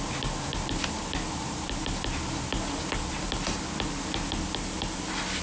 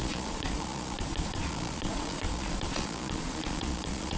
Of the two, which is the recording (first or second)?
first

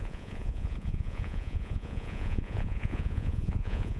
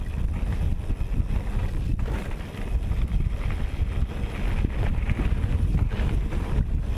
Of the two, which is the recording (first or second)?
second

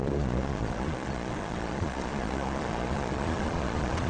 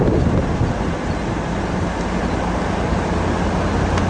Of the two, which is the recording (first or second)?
second